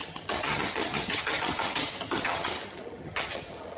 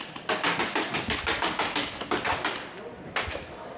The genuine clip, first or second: second